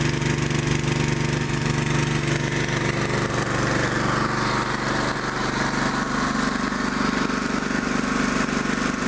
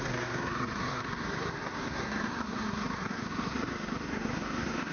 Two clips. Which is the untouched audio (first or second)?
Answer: first